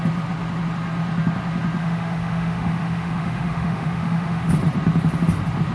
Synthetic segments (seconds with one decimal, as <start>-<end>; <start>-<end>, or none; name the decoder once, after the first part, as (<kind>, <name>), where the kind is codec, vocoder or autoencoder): 1.8-4.5 (autoencoder, DAC-VAE)